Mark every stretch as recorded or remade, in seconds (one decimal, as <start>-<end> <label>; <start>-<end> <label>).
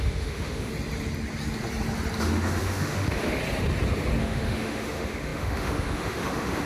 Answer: 0.0-0.7 remade; 0.7-2.2 recorded; 2.2-3.4 remade; 3.4-4.2 recorded; 4.2-6.7 remade